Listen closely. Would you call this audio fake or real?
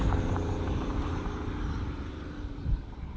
fake